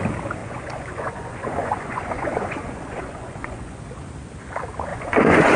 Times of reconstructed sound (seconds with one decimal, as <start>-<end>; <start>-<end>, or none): 0.4-3.8; 4.9-5.6